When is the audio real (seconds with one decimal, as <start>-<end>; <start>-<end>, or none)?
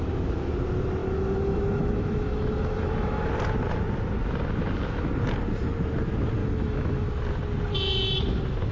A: 0.0-1.0; 3.3-6.4; 7.1-8.7